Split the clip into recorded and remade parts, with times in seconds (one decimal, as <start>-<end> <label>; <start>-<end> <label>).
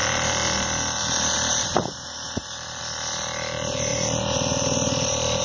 0.0-2.8 remade; 2.8-3.9 recorded; 3.9-5.4 remade